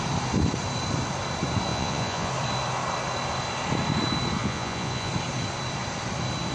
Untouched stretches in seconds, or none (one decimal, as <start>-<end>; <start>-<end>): 0.0-1.7; 2.3-4.4; 5.1-6.5